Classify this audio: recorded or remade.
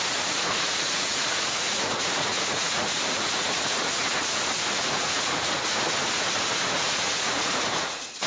remade